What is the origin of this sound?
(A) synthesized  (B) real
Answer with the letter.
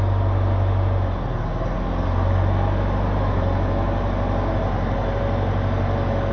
B